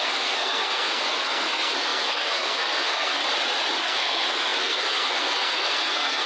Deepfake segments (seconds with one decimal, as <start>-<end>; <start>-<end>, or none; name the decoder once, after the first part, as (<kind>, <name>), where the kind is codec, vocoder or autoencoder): 0.0-3.2 (codec, SNAC); 3.8-6.3